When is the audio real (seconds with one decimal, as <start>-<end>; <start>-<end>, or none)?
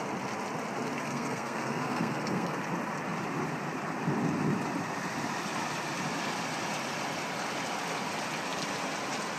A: 0.0-1.0; 2.6-9.4